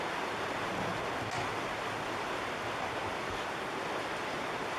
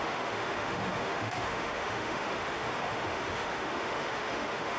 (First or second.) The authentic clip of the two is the first